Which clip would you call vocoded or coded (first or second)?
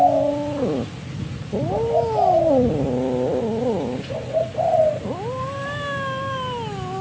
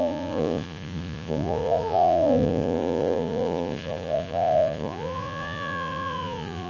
second